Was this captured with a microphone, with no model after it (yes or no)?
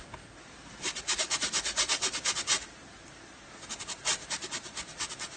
yes